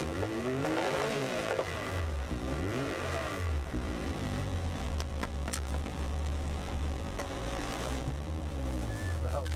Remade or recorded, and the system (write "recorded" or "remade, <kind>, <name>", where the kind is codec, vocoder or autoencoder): remade, vocoder, BigVGAN v2